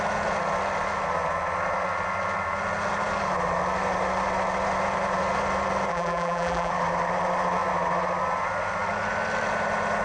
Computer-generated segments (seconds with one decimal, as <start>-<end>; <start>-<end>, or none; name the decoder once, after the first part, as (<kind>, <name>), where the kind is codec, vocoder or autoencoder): 5.9-6.7 (vocoder, BigVGAN v2)